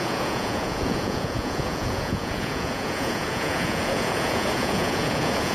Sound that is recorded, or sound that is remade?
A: remade